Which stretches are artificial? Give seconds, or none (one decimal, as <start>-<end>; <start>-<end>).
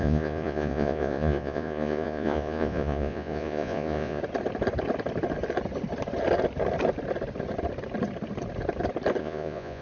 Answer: 0.0-4.2; 9.2-9.8